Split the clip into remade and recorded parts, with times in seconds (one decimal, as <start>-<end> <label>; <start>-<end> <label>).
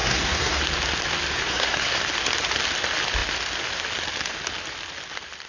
0.0-0.6 remade; 0.6-1.3 recorded; 1.3-2.0 remade; 2.0-5.5 recorded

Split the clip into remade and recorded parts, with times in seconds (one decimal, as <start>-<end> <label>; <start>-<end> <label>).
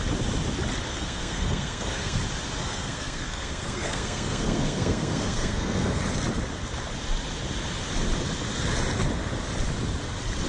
0.0-0.9 recorded; 0.9-2.2 remade; 2.2-2.6 recorded; 2.6-6.0 remade; 6.0-10.5 recorded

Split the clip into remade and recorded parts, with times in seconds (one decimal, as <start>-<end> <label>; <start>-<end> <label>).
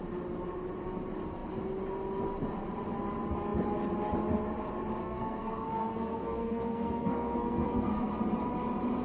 0.0-5.0 recorded; 5.0-8.1 remade; 8.1-9.0 recorded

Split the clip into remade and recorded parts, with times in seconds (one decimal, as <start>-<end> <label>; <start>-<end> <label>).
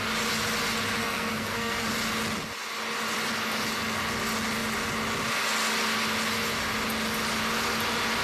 0.0-1.0 recorded; 1.0-1.9 remade; 1.9-8.2 recorded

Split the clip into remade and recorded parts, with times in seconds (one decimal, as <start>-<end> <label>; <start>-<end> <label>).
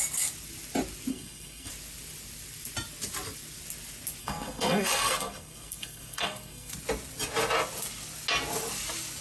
0.0-1.1 recorded; 1.1-1.7 remade; 1.7-4.2 recorded; 4.2-6.7 remade; 6.7-9.2 recorded